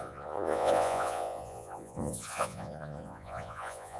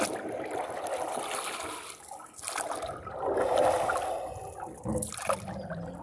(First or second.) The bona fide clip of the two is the second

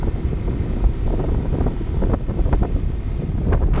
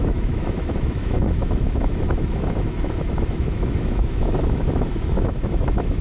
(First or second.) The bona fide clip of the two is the first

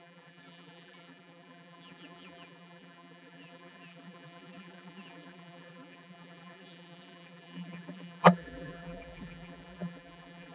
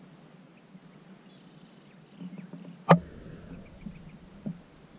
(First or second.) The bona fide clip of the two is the second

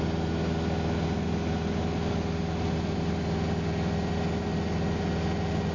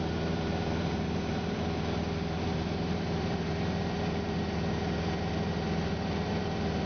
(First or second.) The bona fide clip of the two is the first